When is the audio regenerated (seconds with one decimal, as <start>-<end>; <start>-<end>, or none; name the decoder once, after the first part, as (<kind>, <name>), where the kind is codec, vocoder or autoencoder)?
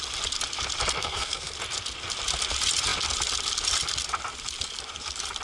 1.0-1.5 (codec, SNAC)